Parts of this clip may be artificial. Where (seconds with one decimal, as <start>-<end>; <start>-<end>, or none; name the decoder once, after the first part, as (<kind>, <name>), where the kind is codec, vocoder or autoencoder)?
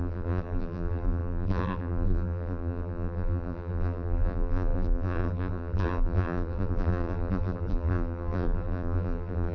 0.0-9.5 (vocoder, BigVGAN v2)